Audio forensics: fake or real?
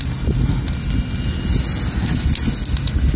real